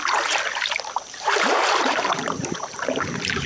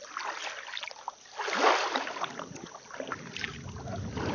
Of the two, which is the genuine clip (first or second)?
second